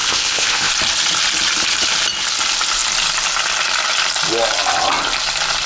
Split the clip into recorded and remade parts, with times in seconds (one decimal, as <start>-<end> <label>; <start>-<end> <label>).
0.0-0.7 remade; 0.7-5.7 recorded